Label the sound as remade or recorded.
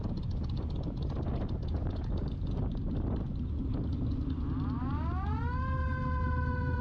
recorded